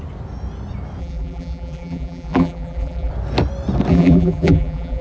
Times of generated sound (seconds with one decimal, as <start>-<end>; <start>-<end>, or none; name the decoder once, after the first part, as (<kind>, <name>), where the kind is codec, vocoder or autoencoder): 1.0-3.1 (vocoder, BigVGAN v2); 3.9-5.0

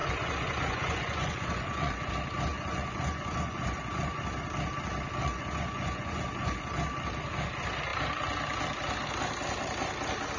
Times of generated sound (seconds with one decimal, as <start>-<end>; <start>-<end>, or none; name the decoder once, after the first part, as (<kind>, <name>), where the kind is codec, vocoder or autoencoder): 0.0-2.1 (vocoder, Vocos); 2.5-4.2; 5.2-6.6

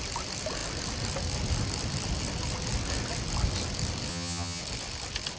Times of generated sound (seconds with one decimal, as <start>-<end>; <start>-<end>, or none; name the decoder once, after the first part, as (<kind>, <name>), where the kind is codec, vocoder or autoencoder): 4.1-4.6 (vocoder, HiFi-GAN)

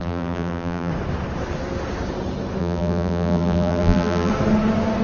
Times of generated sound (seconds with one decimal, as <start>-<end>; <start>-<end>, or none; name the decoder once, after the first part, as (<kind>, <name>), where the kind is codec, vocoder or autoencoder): 0.0-0.9 (vocoder, BigVGAN v2); 2.6-4.3

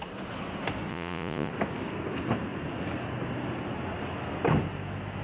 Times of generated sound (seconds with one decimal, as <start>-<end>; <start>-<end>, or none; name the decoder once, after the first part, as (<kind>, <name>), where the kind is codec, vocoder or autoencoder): 0.9-1.5 (vocoder, Vocos)

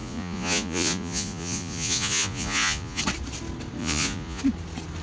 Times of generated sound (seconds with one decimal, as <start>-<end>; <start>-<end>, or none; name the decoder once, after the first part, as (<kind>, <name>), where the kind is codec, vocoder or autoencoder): 0.0-3.0 (vocoder, Vocos); 3.8-4.4

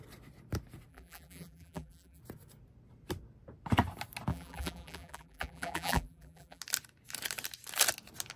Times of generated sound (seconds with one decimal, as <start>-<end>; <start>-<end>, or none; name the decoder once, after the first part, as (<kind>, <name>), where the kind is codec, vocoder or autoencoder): 0.9-2.2 (vocoder, BigVGAN v2); 4.3-6.6

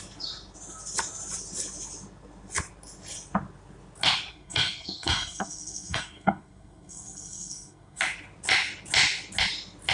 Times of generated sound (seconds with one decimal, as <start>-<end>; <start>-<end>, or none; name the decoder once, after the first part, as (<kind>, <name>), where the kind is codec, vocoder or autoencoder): 4.3-8.0 (codec, SNAC)